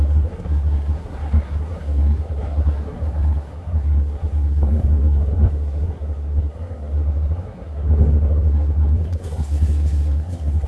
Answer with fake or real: fake